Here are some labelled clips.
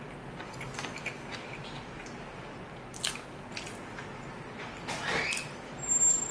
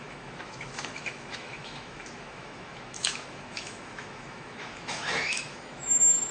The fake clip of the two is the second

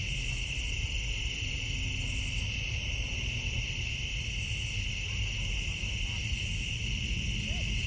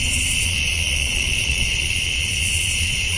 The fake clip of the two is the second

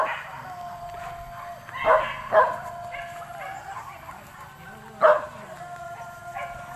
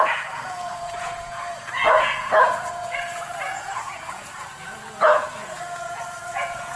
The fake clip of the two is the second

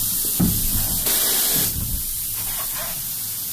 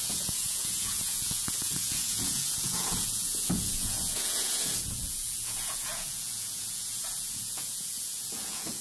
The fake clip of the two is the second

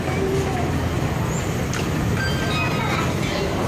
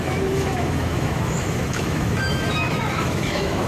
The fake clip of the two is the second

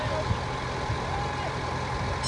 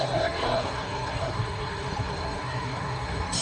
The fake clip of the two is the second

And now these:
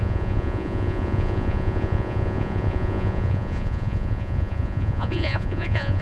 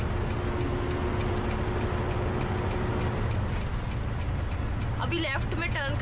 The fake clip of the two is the first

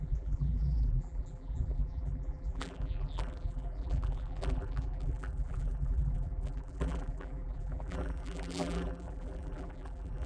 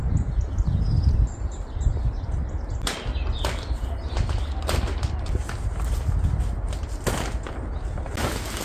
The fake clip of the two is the first